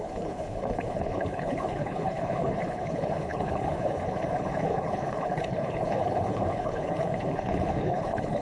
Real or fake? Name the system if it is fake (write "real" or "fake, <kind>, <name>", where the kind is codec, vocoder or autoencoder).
fake, codec, HILCodec